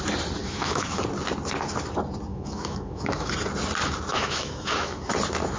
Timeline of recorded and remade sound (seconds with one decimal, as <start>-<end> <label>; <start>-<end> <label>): 0.0-0.4 recorded; 0.4-1.0 remade; 1.0-2.3 recorded; 2.3-3.3 remade; 3.3-4.1 recorded; 4.1-5.1 remade; 5.1-5.6 recorded